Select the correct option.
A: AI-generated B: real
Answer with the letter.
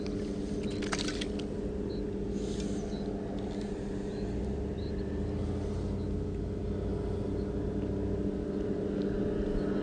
B